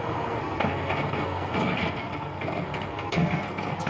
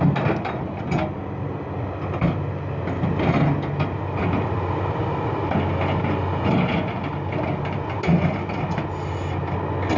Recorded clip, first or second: second